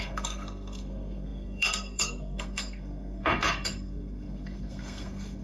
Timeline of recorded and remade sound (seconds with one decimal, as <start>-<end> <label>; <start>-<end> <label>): 0.0-5.4 remade